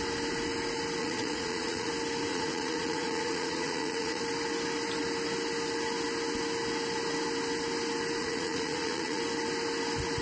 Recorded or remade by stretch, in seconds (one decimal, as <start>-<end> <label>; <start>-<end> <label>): 0.0-1.0 recorded; 1.0-1.9 remade; 1.9-2.3 recorded; 2.3-4.2 remade; 4.2-8.2 recorded; 8.2-9.2 remade; 9.2-10.2 recorded